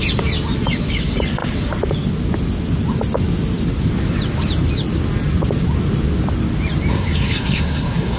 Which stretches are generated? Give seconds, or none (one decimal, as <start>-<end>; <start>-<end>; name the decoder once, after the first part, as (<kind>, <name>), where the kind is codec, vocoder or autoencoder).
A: 6.9-8.2 (codec, SNAC)